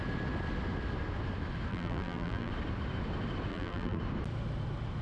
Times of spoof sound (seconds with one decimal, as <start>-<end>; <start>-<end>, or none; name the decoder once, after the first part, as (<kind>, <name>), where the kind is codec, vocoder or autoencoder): 1.7-2.5 (vocoder, BigVGAN v2); 3.5-4.0